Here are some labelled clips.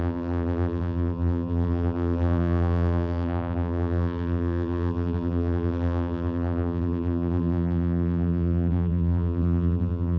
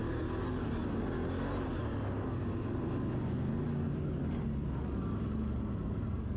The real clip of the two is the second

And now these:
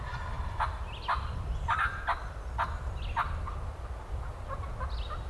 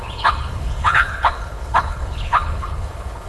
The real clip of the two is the first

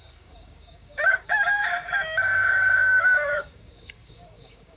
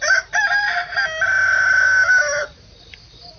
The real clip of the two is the second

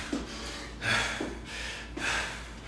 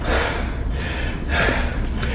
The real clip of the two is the first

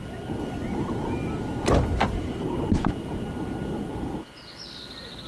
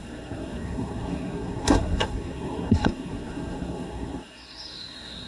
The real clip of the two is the first